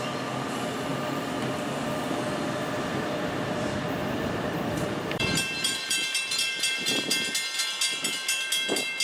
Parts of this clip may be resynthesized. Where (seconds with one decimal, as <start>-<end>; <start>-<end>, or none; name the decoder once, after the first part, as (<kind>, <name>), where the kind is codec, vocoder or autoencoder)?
4.0-7.1 (vocoder, BigVGAN v2)